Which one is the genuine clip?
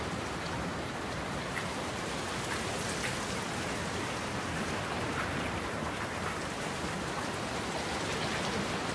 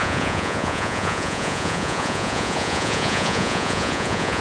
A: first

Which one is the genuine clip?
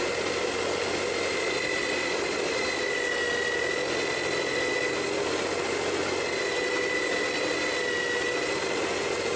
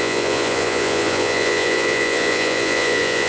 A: first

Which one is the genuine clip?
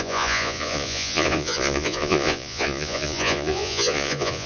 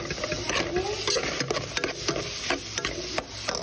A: second